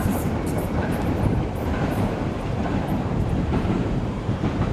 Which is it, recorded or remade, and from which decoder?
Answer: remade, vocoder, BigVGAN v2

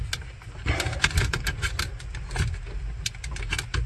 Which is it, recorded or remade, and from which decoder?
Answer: recorded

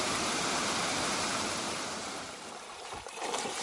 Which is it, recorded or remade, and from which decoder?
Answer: remade, vocoder, BigVGAN v2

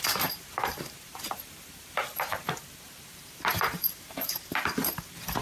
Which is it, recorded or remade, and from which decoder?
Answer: remade, vocoder, BigVGAN v2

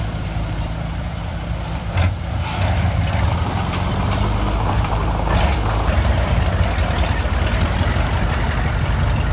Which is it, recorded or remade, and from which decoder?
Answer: remade, vocoder, BigVGAN v2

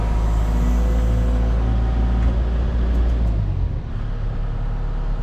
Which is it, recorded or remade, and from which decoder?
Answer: recorded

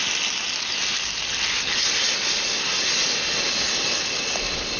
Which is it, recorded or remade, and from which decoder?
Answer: recorded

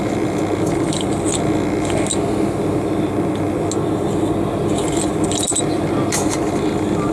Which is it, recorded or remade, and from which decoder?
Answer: recorded